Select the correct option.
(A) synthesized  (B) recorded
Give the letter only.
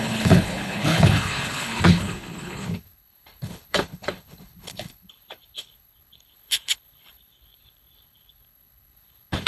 A